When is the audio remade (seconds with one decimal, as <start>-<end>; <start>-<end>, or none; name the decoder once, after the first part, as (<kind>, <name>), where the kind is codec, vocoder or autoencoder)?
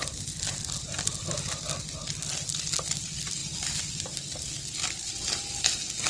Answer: none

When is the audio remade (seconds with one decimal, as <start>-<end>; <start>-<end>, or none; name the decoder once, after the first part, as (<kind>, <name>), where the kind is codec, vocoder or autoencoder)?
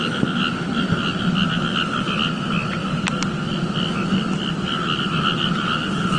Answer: none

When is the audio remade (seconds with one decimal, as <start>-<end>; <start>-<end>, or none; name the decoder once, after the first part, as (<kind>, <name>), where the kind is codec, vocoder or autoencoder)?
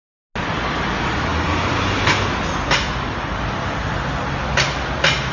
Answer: none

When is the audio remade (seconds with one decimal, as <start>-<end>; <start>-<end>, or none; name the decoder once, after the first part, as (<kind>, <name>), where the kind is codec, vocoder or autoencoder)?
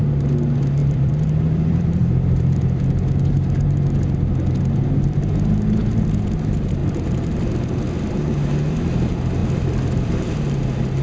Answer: 0.8-2.8 (vocoder, BigVGAN v2); 6.8-7.5; 9.4-10.1